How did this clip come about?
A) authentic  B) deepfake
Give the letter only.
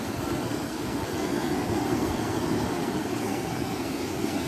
B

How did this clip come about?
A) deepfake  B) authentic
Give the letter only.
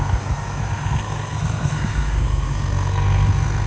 A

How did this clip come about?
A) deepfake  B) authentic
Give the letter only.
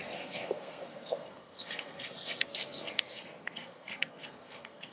A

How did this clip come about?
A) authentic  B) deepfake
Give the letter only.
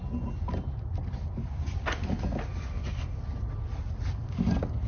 A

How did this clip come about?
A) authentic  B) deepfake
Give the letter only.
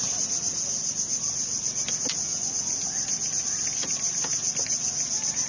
A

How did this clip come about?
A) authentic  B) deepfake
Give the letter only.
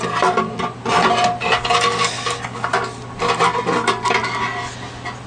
A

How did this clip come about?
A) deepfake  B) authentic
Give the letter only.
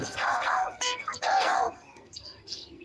A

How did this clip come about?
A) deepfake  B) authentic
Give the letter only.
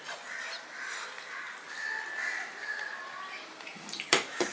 B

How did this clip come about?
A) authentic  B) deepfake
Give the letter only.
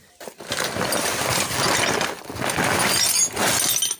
A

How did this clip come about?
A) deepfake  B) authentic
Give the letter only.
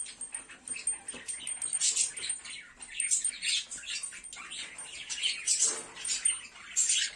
B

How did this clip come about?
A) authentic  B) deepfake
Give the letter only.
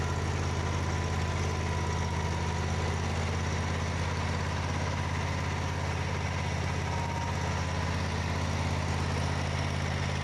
A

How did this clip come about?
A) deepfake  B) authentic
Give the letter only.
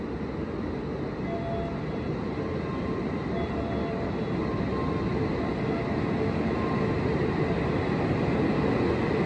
B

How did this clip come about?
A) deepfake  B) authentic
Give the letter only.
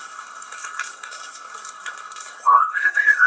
A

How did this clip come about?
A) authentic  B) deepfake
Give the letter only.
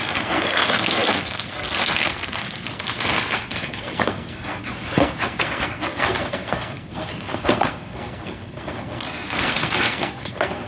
B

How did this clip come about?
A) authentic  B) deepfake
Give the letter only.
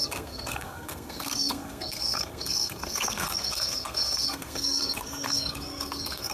B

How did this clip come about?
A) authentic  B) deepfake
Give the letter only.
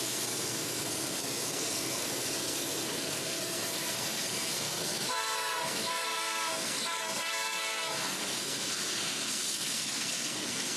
B